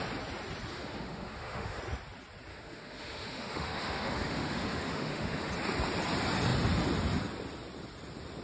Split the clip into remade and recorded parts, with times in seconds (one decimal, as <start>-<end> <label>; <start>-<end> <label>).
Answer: 0.0-0.7 recorded; 0.7-1.8 remade; 1.8-2.5 recorded; 2.5-5.5 remade; 5.5-8.4 recorded